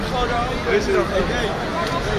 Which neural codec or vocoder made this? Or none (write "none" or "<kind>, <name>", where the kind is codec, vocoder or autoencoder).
none